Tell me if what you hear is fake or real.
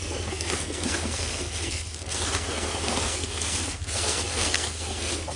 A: fake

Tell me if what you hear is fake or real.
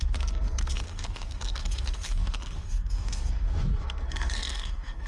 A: fake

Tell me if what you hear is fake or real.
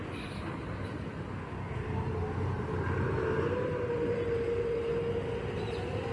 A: real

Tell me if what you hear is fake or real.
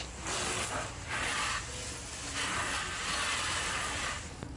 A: real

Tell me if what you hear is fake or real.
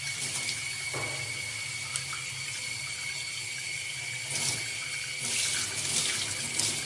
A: real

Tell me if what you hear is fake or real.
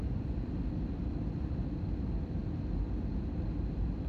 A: real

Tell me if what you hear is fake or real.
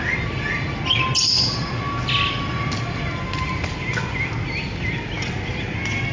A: real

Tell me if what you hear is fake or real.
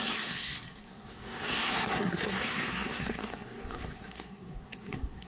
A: fake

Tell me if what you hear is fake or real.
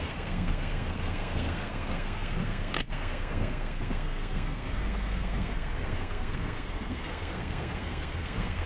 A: fake